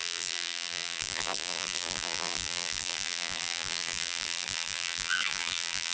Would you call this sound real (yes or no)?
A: no